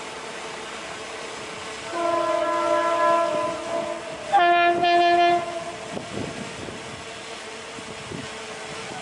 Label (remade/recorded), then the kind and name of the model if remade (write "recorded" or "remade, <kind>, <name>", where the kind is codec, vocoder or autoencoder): recorded